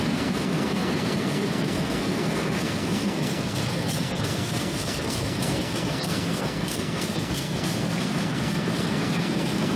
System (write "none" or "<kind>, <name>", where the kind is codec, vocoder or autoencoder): codec, SNAC